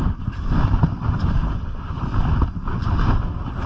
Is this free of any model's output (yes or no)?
yes